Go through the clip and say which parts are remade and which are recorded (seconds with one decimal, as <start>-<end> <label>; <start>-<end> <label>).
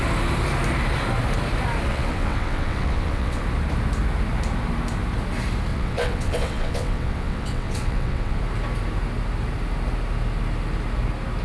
0.0-1.9 recorded; 1.9-3.4 remade; 3.4-5.7 recorded; 5.7-8.4 remade; 8.4-11.4 recorded